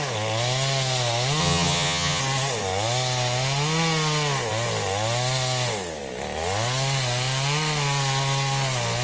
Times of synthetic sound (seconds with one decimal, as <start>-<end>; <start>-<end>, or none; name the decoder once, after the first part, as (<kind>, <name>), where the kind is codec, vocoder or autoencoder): 1.4-2.2 (vocoder, HiFi-GAN)